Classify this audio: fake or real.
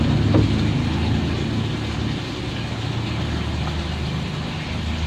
real